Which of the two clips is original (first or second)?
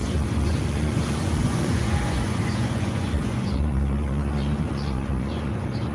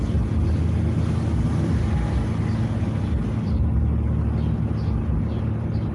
second